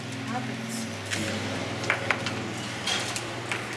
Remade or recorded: recorded